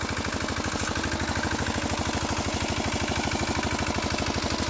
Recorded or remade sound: recorded